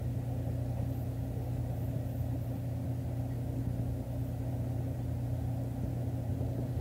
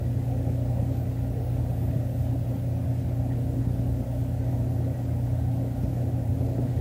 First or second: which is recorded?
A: first